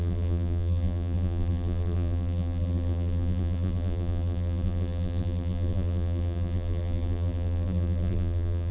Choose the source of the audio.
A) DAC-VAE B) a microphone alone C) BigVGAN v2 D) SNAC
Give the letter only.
C